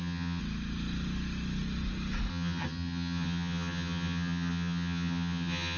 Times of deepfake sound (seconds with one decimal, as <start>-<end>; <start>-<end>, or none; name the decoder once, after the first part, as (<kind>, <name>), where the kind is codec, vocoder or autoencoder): 0.0-0.4 (vocoder, HiFi-GAN); 2.3-5.8